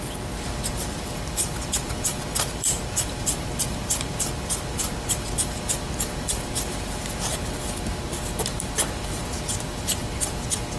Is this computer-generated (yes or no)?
yes